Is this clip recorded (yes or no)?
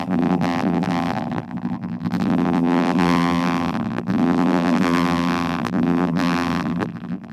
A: no